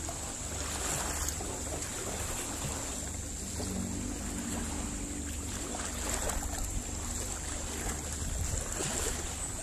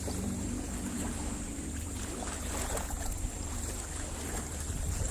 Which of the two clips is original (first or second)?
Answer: first